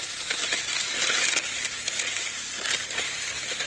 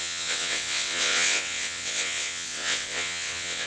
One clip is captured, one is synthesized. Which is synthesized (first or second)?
second